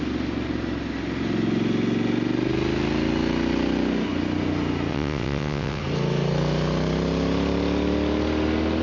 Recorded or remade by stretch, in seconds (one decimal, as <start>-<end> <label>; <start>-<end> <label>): 0.0-4.9 recorded; 4.9-5.8 remade; 5.8-8.8 recorded